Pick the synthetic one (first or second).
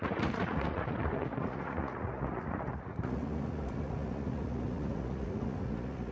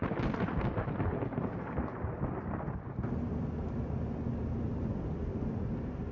first